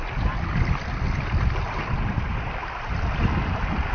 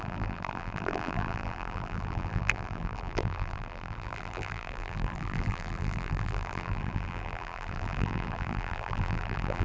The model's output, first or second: second